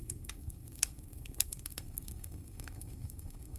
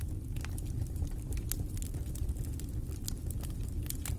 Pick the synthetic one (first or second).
first